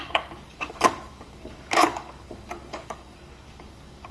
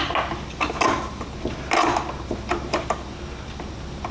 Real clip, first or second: second